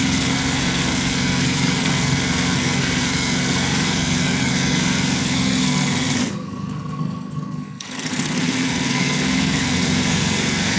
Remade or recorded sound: remade